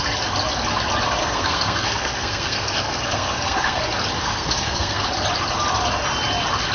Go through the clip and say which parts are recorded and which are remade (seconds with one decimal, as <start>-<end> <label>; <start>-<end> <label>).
0.0-1.2 recorded; 1.2-3.8 remade; 3.8-4.2 recorded; 4.2-5.0 remade; 5.0-6.7 recorded